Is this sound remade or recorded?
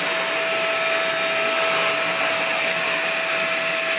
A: recorded